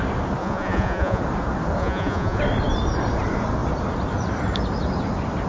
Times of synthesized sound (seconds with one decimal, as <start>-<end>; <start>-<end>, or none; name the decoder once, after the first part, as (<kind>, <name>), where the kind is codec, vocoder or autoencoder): 0.4-1.2 (vocoder, Vocos); 1.8-2.4